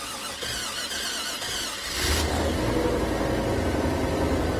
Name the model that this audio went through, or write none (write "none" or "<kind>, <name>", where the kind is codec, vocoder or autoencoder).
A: none